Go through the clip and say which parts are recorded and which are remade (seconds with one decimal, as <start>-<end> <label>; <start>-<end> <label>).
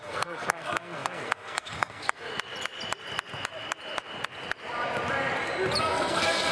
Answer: 0.0-2.3 remade; 2.3-5.8 recorded; 5.8-6.5 remade